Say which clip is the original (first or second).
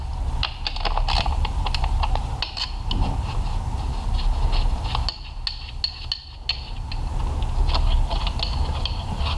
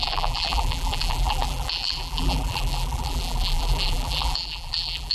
first